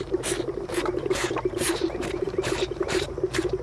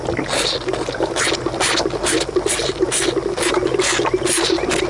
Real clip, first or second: second